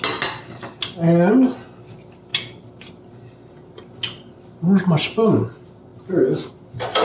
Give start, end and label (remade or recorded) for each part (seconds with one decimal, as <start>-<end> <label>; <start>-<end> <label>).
0.0-7.0 recorded